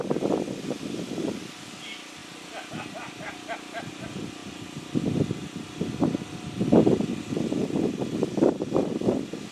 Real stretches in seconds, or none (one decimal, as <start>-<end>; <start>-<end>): 0.0-9.5